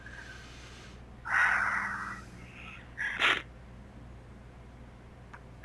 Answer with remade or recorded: recorded